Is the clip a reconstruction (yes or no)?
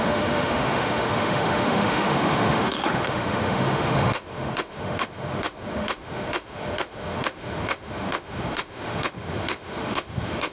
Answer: yes